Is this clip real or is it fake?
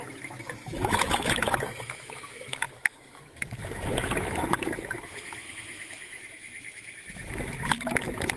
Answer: fake